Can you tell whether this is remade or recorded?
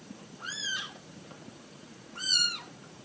remade